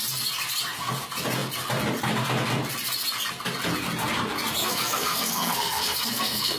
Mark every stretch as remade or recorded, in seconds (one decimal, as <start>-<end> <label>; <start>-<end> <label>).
0.0-4.6 recorded; 4.6-6.6 remade